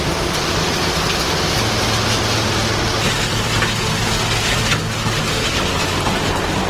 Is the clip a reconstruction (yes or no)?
no